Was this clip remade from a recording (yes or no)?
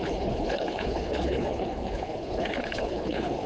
yes